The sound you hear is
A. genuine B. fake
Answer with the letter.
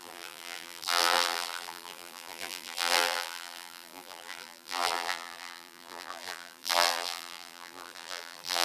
B